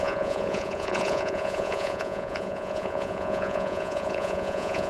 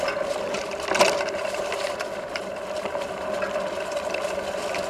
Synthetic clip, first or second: first